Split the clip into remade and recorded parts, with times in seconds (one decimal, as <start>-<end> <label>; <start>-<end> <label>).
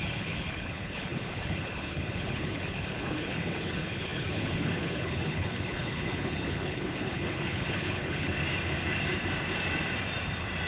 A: 0.0-8.4 remade; 8.4-10.7 recorded